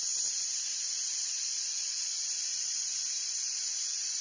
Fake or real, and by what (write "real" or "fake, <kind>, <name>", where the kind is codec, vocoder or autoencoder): real